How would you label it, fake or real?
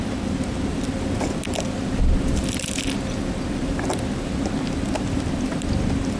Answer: real